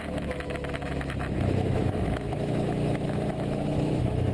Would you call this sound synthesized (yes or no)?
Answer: yes